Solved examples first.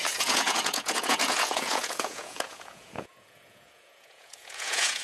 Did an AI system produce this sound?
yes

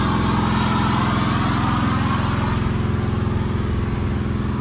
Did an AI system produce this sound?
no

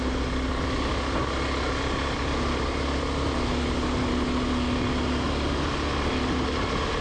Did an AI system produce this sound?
no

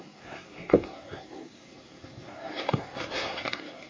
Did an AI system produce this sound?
yes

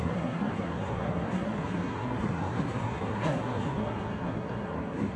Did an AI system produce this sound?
yes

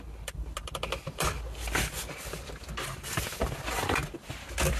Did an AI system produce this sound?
no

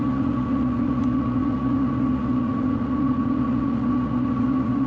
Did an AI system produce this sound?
yes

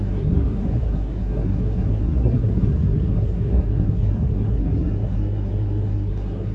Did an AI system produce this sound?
yes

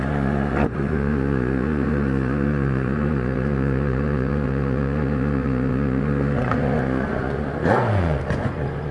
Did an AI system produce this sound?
yes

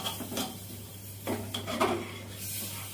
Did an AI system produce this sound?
no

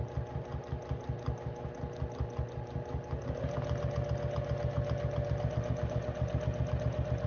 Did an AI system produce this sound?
no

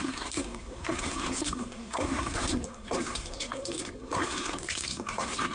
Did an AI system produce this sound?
yes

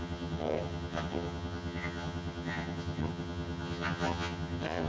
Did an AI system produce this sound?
yes